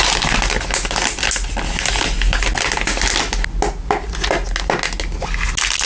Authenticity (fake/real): real